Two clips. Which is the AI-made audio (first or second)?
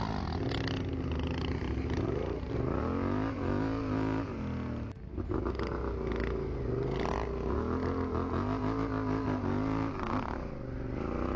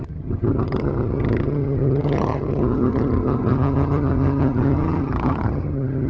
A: second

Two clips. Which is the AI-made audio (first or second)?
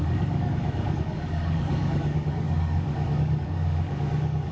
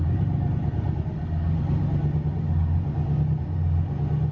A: first